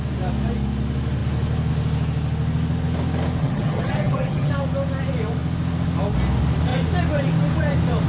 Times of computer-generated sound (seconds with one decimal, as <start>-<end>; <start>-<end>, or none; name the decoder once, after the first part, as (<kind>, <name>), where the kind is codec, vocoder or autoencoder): 3.4-4.5 (vocoder, HiFi-GAN)